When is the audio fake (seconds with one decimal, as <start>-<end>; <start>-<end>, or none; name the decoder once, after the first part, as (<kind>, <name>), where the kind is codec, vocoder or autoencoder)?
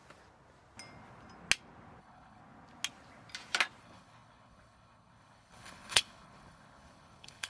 2.0-2.4 (codec, HILCodec); 3.8-7.5